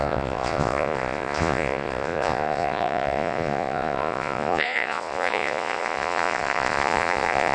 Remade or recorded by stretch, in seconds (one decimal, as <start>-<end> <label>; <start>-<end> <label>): 0.0-7.5 remade